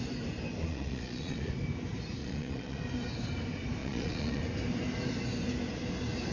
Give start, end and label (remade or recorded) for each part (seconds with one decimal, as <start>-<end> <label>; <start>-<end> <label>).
0.0-0.6 recorded; 0.6-1.5 remade; 1.5-2.2 recorded; 2.2-2.8 remade; 2.8-3.8 recorded; 3.8-4.4 remade; 4.4-6.3 recorded